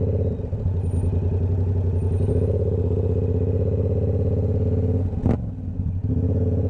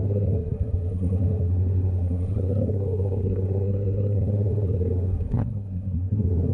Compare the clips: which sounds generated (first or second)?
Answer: second